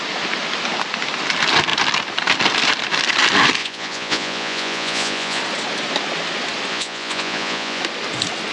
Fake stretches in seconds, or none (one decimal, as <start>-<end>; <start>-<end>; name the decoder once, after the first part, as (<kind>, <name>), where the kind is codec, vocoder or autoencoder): 3.6-5.4 (vocoder, Vocos); 6.7-7.8